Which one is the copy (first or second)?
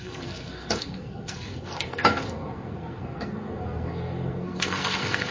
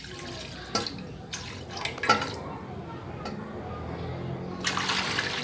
first